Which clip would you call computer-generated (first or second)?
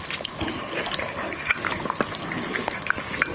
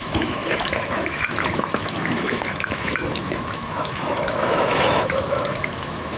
second